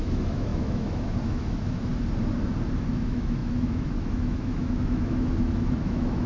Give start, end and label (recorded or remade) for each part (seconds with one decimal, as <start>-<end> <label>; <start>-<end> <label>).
0.0-1.9 remade; 1.9-2.9 recorded; 2.9-6.3 remade